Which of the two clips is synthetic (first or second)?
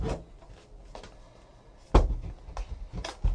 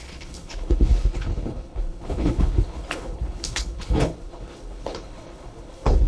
second